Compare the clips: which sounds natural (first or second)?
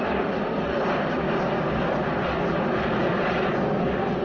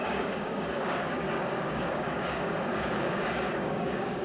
first